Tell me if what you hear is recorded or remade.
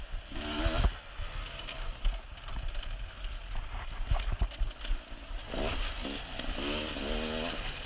recorded